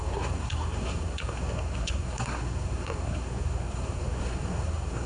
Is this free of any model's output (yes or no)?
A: no